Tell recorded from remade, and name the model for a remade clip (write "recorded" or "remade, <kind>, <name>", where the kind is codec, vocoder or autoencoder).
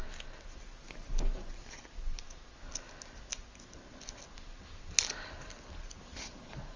recorded